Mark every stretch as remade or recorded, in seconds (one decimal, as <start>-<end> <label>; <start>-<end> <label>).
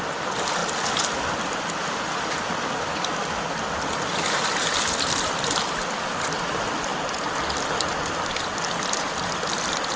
0.0-10.0 recorded